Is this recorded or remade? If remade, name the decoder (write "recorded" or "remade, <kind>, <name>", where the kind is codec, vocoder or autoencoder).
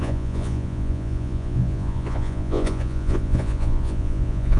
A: remade, vocoder, Vocos